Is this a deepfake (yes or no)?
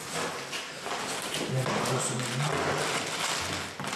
no